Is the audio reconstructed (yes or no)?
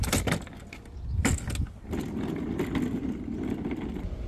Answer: no